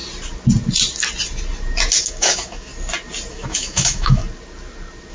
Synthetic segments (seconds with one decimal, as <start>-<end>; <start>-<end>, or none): 2.0-2.7; 3.3-4.2

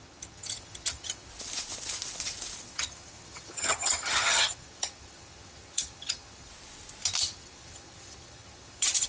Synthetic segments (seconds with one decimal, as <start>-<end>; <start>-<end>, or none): 0.0-1.3; 2.6-6.5; 7.2-9.1

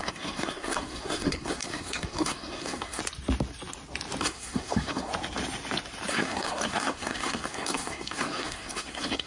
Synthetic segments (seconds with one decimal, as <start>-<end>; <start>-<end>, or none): 0.0-3.0; 4.2-5.1; 6.1-9.3

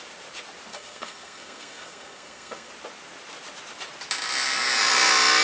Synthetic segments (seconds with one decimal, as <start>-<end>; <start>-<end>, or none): 0.7-2.7

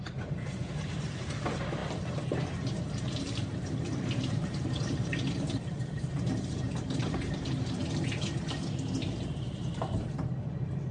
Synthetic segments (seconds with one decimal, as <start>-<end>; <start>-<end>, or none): 0.0-7.8; 9.4-10.9

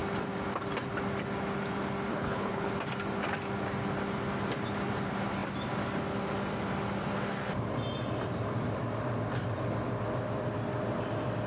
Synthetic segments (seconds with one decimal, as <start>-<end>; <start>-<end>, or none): 2.1-2.7

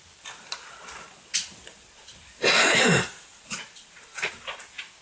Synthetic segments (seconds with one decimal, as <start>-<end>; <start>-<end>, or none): 1.6-4.6

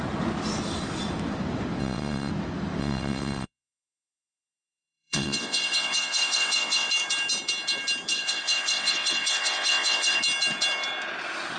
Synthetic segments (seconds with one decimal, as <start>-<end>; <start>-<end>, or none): 1.8-2.3; 2.8-6.9; 8.1-10.2